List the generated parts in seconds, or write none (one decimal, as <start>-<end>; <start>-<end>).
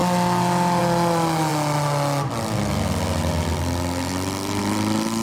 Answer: none